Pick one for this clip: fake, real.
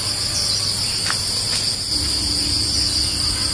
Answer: real